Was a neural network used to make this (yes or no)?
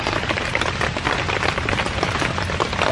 no